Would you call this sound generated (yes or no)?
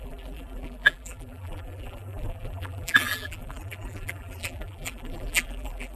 yes